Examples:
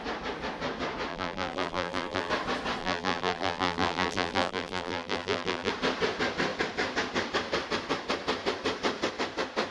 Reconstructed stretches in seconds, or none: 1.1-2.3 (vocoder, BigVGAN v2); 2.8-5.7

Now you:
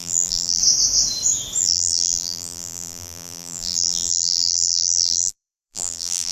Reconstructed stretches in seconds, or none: 0.0-0.6 (vocoder, BigVGAN v2); 1.6-6.3

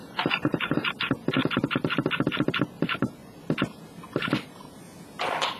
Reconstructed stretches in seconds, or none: 1.4-4.8 (vocoder, BigVGAN v2)

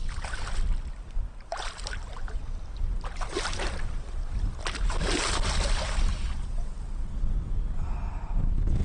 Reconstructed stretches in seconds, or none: 1.5-2.4 (vocoder, BigVGAN v2)

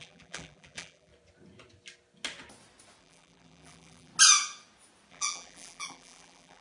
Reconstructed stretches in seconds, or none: 0.0-1.1 (vocoder, BigVGAN v2); 3.0-4.1; 5.1-6.6

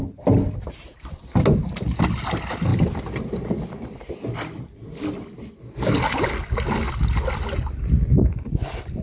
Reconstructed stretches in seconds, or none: none

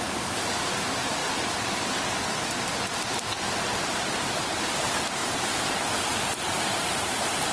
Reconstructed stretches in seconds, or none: 0.0-5.2 (vocoder, BigVGAN v2); 6.3-7.5